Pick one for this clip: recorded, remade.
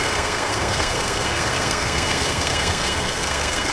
remade